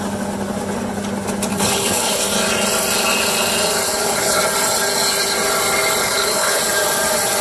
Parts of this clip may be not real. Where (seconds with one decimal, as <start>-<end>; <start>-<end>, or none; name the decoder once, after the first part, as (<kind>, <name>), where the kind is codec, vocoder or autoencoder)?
1.5-2.2 (codec, HILCodec); 3.9-4.4; 6.0-6.6